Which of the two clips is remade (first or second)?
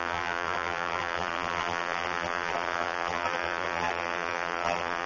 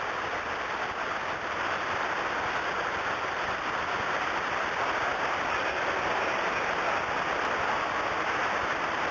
first